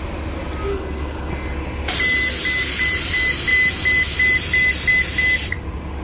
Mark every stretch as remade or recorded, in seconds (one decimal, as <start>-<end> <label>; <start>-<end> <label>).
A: 0.0-0.7 recorded; 0.7-1.3 remade; 1.3-6.0 recorded